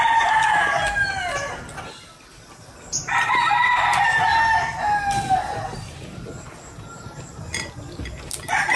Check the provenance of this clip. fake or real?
real